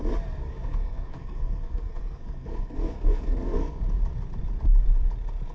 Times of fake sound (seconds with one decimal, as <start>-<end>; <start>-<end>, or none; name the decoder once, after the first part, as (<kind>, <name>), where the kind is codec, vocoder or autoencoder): 0.5-3.8 (codec, SNAC)